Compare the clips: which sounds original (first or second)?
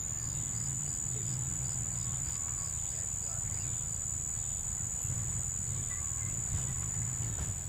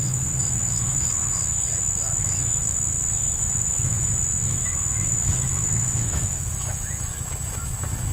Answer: first